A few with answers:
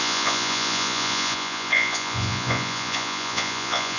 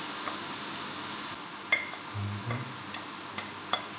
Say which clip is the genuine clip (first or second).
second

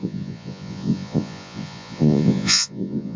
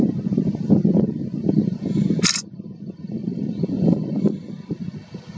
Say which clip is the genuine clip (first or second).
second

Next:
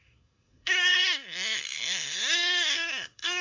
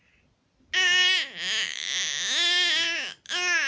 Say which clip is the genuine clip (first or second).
second